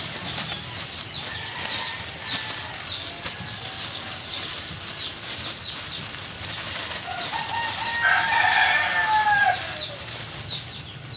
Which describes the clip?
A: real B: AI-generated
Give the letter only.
A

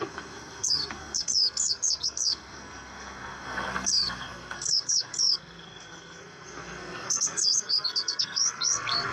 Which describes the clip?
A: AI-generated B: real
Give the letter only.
A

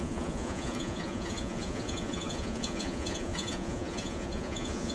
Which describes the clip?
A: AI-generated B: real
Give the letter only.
A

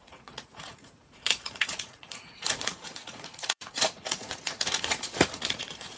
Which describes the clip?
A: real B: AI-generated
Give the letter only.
B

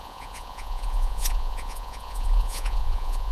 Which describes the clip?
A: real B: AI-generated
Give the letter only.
B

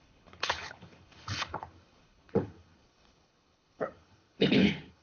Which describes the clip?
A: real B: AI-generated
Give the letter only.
B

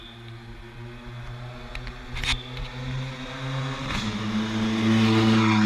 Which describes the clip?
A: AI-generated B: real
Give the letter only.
B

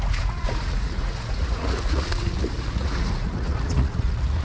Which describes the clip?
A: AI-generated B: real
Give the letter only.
A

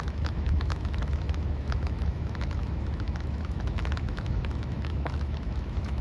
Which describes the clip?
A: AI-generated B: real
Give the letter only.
A